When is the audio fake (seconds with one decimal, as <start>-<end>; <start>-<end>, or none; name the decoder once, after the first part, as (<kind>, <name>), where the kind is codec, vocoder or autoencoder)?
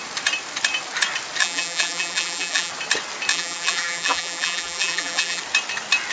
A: 1.4-2.7 (vocoder, BigVGAN v2); 3.3-5.4